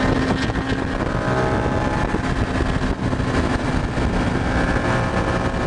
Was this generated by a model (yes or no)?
no